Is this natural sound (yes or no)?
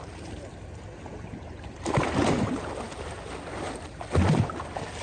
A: yes